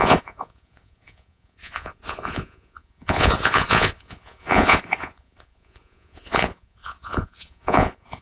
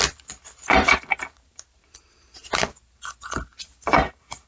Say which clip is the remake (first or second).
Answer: first